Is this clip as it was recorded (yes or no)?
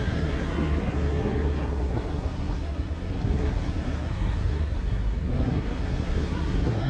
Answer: no